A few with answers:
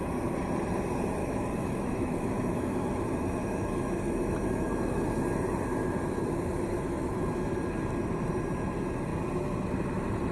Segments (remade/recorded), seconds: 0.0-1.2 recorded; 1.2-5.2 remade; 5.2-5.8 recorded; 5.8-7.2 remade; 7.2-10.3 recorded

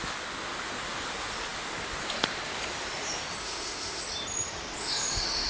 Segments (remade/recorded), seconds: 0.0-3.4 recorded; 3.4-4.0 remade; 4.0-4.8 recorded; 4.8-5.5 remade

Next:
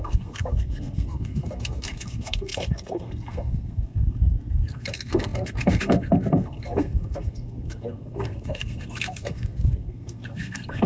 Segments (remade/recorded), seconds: 0.0-10.9 remade